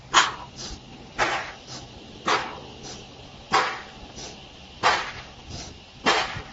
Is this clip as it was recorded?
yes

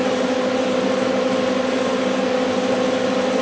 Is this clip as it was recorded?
yes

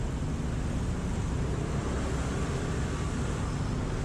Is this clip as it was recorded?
yes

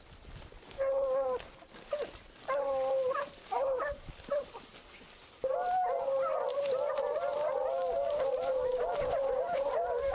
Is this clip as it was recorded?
yes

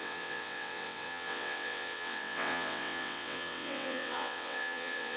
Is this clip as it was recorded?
no